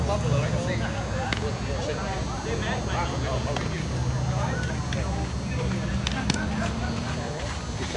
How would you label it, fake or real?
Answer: real